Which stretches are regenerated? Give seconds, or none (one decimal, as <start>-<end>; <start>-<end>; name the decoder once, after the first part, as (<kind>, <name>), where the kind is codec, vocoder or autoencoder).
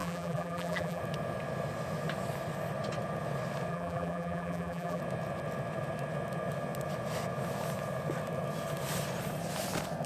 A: 0.0-1.0 (vocoder, BigVGAN v2); 3.7-5.0